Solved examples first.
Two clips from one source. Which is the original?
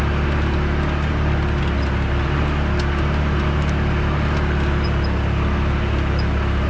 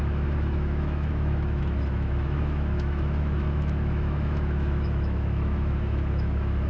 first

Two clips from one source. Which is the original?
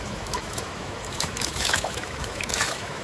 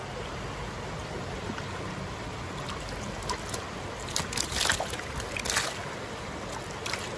second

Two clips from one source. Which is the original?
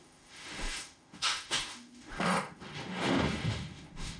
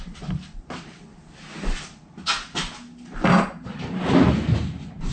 second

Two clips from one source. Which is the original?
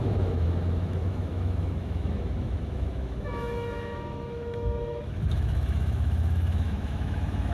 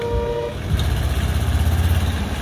second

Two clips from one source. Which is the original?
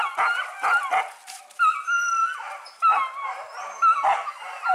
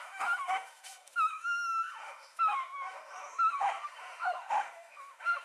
first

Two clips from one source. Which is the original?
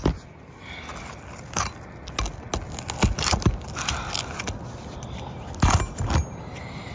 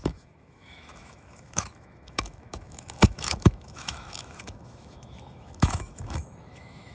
first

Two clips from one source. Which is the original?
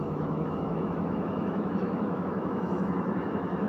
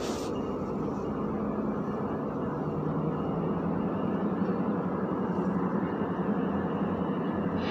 second